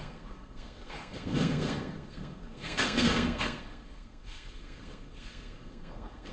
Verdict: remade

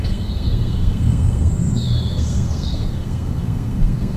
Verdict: remade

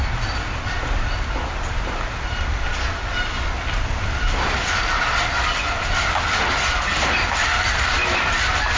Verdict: recorded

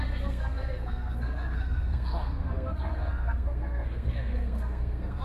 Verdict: remade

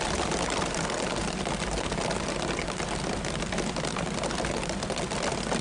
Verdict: recorded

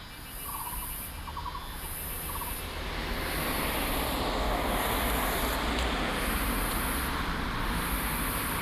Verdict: recorded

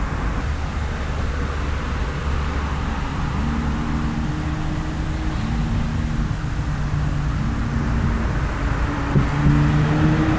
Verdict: recorded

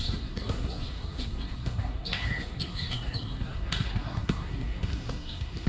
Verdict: remade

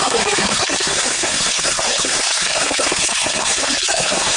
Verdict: remade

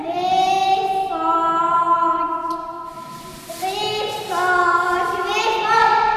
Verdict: recorded